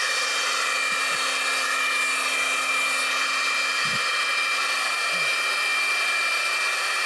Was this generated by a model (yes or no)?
no